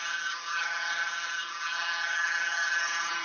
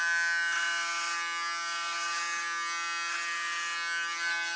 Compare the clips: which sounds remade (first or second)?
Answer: first